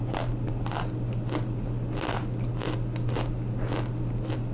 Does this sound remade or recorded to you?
recorded